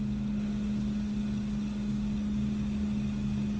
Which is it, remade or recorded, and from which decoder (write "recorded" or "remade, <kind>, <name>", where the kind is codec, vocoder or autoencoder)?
recorded